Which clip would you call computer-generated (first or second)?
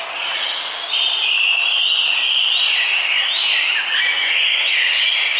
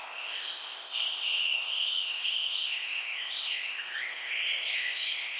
second